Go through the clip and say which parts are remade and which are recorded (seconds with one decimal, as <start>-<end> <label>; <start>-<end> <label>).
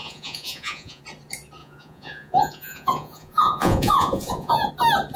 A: 0.0-1.0 remade; 1.0-1.6 recorded; 1.6-4.7 remade; 4.7-5.2 recorded